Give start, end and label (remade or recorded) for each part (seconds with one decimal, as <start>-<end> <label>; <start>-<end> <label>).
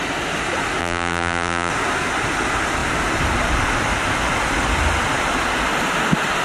0.0-0.8 recorded; 0.8-1.7 remade; 1.7-6.4 recorded